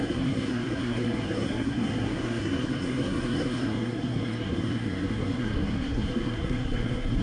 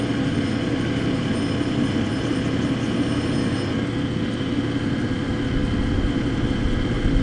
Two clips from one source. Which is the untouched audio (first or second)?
second